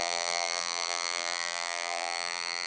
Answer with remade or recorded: remade